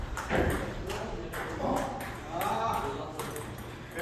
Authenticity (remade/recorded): remade